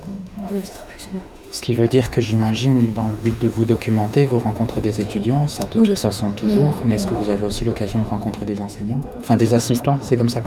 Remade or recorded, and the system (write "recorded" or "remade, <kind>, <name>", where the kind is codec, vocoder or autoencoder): remade, autoencoder, DAC-VAE